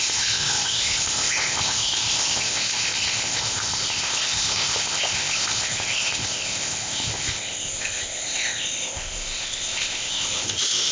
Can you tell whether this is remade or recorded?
remade